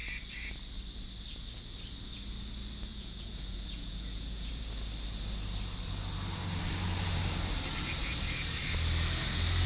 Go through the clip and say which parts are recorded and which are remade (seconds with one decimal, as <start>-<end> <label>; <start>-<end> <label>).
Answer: 0.0-2.9 recorded; 2.9-4.6 remade; 4.6-9.7 recorded